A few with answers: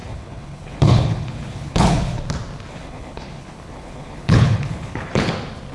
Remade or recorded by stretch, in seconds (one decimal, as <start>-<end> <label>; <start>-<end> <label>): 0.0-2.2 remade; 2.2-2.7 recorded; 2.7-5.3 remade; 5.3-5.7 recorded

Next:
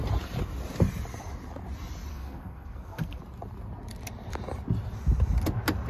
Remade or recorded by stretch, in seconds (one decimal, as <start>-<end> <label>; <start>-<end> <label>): 0.0-2.1 recorded; 2.1-3.2 remade; 3.2-5.9 recorded

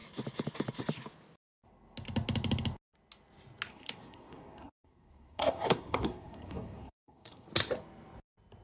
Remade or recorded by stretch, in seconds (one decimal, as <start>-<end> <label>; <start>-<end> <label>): 0.0-3.7 recorded; 3.7-7.5 remade; 7.5-8.6 recorded

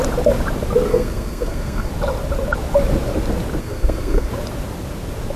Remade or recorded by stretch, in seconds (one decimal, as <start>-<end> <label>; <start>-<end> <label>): 0.0-0.9 recorded; 0.9-1.9 remade; 1.9-3.6 recorded; 3.6-4.3 remade; 4.3-5.4 recorded